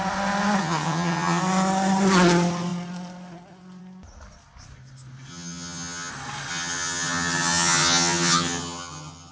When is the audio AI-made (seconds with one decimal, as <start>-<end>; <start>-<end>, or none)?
0.6-1.4; 5.3-6.1; 6.5-9.3